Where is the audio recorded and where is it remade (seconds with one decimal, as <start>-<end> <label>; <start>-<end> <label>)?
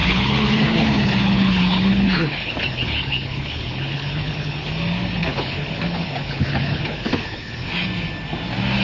0.0-4.7 remade; 4.7-5.2 recorded; 5.2-7.7 remade; 7.7-8.8 recorded